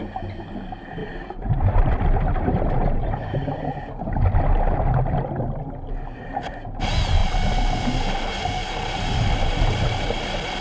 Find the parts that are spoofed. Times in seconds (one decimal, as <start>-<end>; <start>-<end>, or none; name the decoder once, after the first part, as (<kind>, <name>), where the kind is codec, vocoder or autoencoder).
1.0-3.7 (vocoder, BigVGAN v2); 7.2-10.2